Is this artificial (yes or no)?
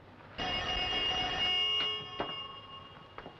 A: no